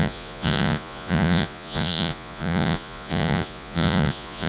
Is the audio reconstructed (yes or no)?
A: yes